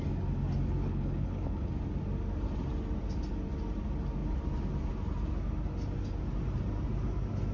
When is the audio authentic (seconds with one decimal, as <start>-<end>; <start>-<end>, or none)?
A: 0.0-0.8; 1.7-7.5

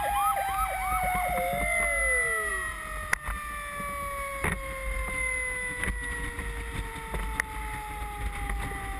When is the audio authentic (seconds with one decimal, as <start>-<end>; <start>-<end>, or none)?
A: 0.0-9.0

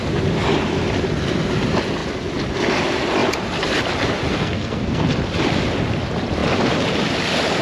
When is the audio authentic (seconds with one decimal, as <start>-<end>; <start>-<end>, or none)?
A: 0.0-4.3; 5.1-7.6